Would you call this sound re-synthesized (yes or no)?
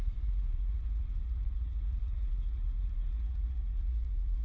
yes